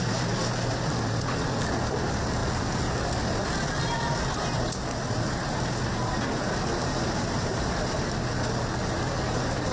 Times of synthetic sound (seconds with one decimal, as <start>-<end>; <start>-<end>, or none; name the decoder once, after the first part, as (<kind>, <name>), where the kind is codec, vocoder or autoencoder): none